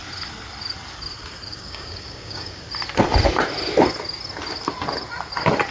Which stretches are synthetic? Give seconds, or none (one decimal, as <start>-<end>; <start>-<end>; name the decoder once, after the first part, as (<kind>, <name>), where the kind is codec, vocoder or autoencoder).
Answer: 1.5-2.6 (codec, DAC)